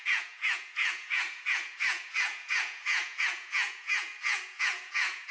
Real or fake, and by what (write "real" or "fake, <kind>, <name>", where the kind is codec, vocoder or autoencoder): fake, vocoder, Vocos